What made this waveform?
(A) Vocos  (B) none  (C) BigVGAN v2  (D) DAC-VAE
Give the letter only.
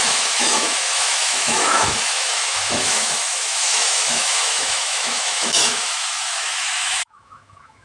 D